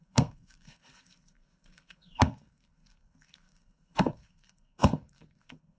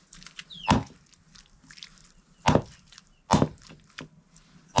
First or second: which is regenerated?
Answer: first